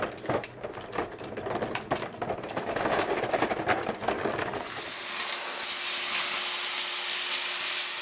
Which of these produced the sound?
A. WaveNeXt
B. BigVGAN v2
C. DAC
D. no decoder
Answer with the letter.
D